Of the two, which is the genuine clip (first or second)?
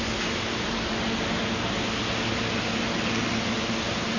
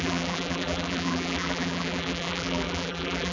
first